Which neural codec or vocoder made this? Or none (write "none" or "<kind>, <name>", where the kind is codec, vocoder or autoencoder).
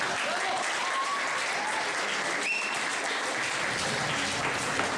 none